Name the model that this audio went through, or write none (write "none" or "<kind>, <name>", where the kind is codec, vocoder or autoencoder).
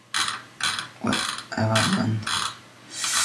none